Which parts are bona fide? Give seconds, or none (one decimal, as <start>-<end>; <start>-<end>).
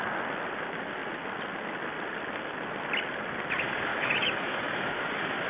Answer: 0.0-3.9; 4.9-5.5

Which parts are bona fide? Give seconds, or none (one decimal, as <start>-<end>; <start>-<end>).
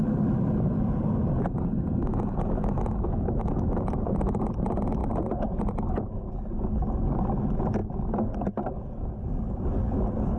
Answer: 0.0-2.0; 4.4-10.4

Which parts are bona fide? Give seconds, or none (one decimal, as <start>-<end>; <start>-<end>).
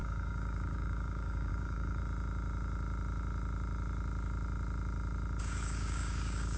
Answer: 2.0-5.4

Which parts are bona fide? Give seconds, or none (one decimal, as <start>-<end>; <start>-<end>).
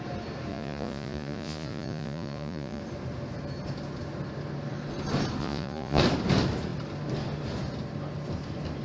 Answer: 0.0-0.5; 2.8-5.4; 6.0-8.8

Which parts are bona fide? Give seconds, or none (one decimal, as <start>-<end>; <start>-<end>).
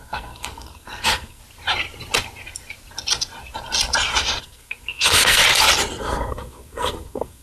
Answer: 1.4-4.4; 5.4-6.0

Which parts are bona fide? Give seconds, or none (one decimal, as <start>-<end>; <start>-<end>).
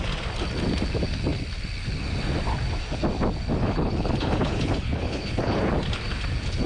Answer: 0.0-3.6; 5.7-6.7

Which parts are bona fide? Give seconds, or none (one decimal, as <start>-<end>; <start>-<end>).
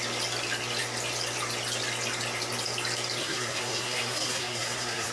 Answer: 0.0-3.2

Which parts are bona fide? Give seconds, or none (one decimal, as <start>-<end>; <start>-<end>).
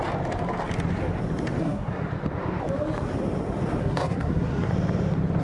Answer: 0.0-1.6; 2.0-3.8; 4.7-5.4